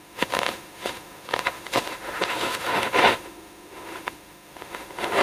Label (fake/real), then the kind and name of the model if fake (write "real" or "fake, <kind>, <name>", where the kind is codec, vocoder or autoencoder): fake, autoencoder, DAC-VAE